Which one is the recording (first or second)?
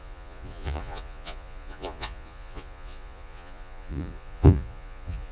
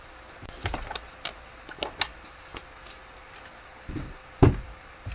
second